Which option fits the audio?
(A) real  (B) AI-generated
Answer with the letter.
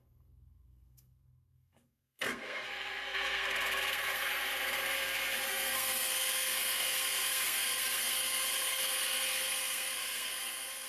B